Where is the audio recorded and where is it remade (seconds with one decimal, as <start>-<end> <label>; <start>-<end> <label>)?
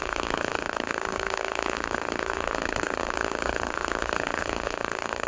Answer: 0.0-5.3 remade